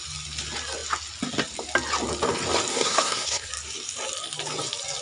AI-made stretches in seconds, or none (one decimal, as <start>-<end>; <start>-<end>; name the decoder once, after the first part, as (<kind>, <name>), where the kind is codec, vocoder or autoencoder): 2.7-3.5 (codec, SNAC)